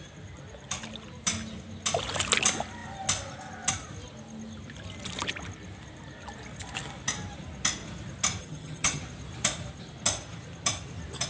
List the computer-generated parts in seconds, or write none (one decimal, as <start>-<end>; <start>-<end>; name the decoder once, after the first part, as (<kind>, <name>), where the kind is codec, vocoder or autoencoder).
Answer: 8.4-9.0 (vocoder, HiFi-GAN)

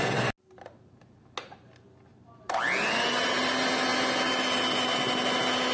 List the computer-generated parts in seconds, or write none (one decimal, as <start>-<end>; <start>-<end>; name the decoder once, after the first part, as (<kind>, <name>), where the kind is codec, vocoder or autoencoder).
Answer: none

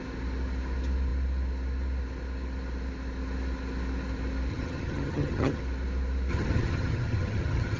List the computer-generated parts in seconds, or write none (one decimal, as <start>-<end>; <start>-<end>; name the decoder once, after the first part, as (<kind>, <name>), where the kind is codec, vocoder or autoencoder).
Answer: 4.5-5.6 (vocoder, HiFi-GAN); 6.3-7.8

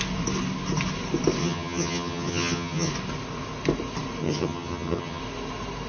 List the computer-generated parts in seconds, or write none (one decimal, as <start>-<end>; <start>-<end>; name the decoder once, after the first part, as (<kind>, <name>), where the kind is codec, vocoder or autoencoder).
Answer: 1.4-2.9 (vocoder, HiFi-GAN); 4.2-5.2

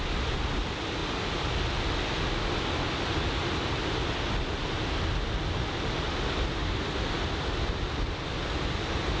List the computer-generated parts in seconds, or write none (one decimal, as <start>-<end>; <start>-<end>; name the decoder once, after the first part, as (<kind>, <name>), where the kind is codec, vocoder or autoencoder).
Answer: none